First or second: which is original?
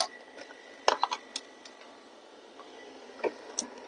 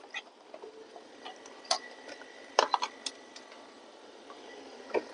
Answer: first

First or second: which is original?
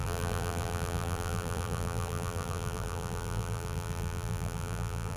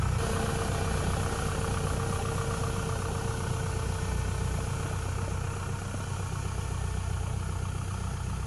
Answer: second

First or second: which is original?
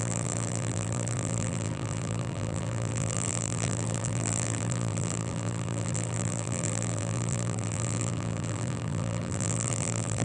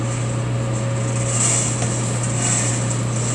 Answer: second